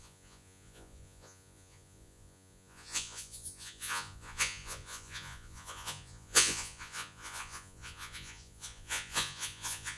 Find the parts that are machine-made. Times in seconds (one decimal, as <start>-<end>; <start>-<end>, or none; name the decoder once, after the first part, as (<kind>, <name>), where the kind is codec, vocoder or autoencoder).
0.0-10.0 (vocoder, Vocos)